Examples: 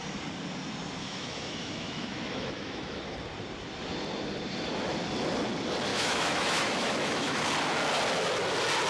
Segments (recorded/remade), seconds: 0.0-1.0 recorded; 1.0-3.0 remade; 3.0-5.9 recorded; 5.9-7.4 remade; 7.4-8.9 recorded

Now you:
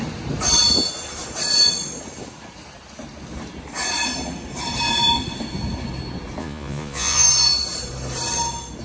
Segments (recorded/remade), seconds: 0.0-6.4 recorded; 6.4-7.3 remade; 7.3-8.8 recorded

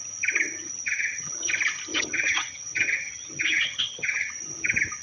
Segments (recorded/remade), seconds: 0.0-0.6 recorded; 0.6-1.5 remade; 1.5-1.9 recorded; 1.9-4.3 remade; 4.3-5.0 recorded

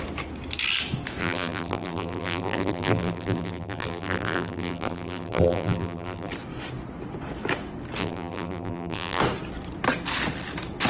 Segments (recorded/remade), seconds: 0.0-1.2 recorded; 1.2-6.3 remade; 6.3-8.0 recorded; 8.0-9.2 remade; 9.2-10.9 recorded

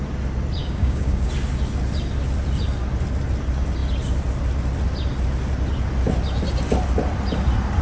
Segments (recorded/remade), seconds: 0.0-0.6 recorded; 0.6-1.3 remade; 1.3-7.8 recorded

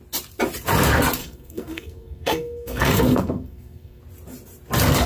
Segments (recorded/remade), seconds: 0.0-1.2 recorded; 1.2-4.0 remade; 4.0-5.1 recorded

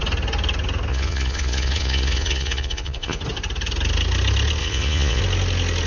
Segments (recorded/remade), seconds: 0.0-0.9 recorded; 0.9-3.2 remade; 3.2-4.6 recorded; 4.6-5.2 remade; 5.2-5.9 recorded